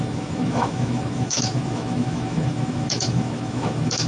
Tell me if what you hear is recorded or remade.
remade